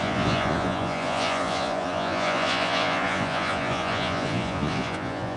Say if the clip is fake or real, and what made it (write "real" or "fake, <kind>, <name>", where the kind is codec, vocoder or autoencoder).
fake, vocoder, Vocos